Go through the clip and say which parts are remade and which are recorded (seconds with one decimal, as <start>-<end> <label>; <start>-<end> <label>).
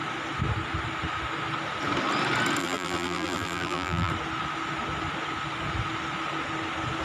0.0-2.6 recorded; 2.6-4.1 remade; 4.1-7.0 recorded